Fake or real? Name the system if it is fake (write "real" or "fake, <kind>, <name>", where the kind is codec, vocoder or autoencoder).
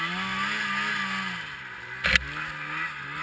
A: real